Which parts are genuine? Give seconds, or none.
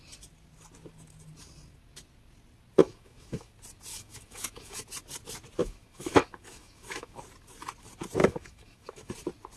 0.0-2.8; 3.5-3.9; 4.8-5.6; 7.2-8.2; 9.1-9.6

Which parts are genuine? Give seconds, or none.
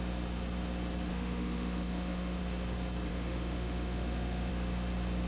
0.0-1.1; 2.4-3.1; 4.5-5.3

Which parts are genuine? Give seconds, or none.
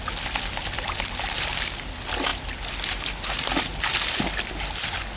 0.0-5.2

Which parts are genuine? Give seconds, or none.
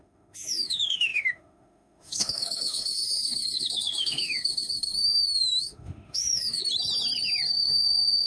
6.6-7.5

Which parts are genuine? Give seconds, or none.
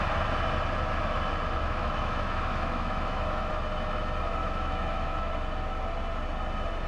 0.0-1.6; 3.5-4.4; 5.3-6.9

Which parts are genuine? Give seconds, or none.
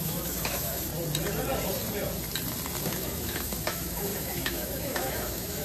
0.9-2.8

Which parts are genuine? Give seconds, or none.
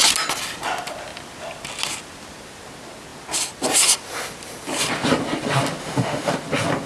0.0-5.8; 6.3-6.9